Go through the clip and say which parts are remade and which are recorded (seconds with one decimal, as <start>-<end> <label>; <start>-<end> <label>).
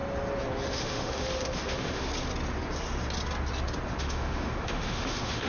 0.0-0.7 recorded; 0.7-2.1 remade; 2.1-4.0 recorded; 4.0-5.5 remade